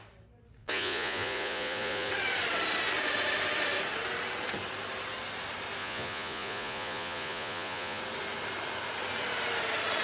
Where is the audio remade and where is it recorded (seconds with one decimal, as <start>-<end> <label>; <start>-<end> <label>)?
0.0-0.6 recorded; 0.6-2.1 remade; 2.1-5.8 recorded; 5.8-8.0 remade; 8.0-10.0 recorded